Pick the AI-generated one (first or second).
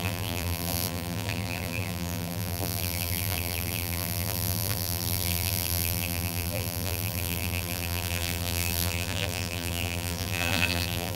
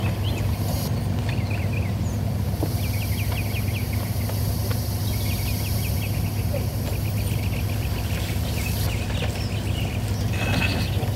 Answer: first